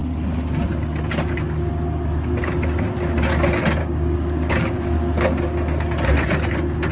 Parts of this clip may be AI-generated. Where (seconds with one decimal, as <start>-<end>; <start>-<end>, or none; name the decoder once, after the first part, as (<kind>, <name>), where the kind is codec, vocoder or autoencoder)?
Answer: 3.8-4.8 (codec, DAC)